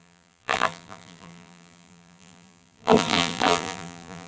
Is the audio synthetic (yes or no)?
yes